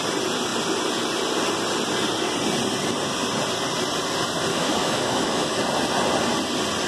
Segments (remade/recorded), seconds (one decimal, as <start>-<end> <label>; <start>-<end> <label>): 0.0-4.5 recorded; 4.5-5.6 remade; 5.6-6.9 recorded